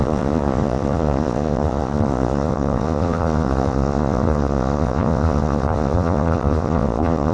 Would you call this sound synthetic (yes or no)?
yes